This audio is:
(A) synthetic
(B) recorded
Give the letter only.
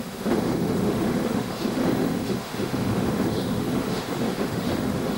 A